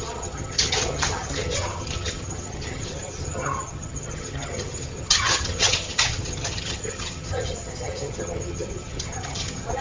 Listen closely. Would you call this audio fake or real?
fake